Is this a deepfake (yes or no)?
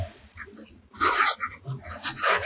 yes